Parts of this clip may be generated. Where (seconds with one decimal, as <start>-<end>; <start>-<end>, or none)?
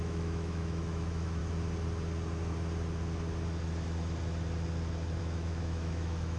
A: 0.0-1.4; 5.2-6.4